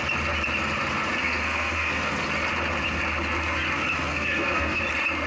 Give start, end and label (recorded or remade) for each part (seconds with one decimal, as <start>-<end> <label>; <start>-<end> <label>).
0.0-1.2 recorded; 1.2-2.1 remade; 2.1-4.1 recorded; 4.1-4.8 remade; 4.8-5.3 recorded